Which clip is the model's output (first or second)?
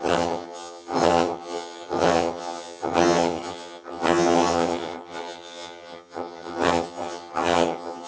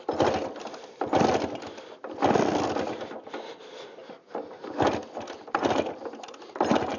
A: first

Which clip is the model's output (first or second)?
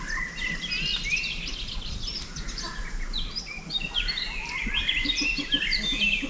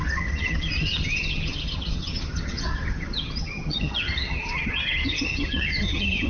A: second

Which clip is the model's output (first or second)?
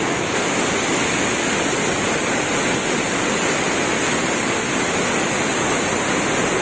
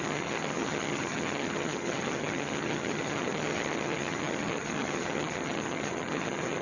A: second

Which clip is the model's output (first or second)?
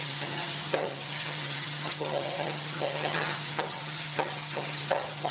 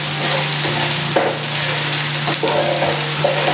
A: first